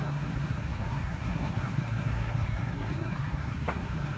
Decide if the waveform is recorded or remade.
remade